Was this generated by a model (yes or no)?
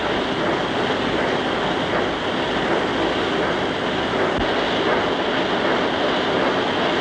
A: no